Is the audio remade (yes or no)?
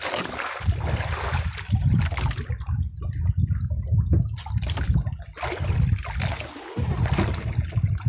no